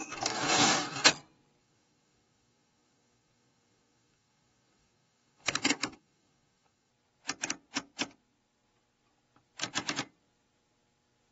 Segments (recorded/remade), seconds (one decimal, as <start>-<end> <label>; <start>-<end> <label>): 0.0-1.1 remade; 1.1-1.6 recorded; 1.6-6.9 remade; 6.9-11.3 recorded